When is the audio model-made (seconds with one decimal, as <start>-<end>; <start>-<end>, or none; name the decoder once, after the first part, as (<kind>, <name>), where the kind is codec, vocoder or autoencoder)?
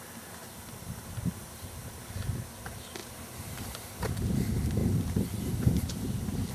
0.4-2.0 (vocoder, BigVGAN v2); 3.0-4.1; 4.8-6.5